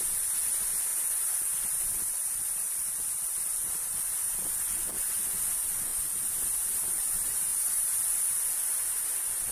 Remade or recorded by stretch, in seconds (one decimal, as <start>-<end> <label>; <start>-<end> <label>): 0.0-0.9 recorded; 0.9-4.5 remade; 4.5-5.9 recorded; 5.9-7.0 remade; 7.0-7.5 recorded; 7.5-8.2 remade; 8.2-9.5 recorded